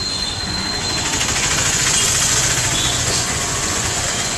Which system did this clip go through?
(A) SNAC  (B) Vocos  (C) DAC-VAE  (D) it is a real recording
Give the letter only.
B